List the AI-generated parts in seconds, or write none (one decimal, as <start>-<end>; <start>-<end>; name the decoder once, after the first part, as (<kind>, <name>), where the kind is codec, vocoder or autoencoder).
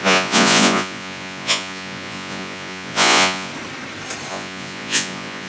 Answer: 0.0-3.5 (vocoder, Vocos); 4.3-5.5